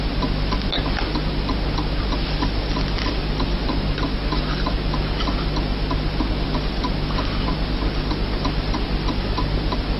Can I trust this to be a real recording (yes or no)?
yes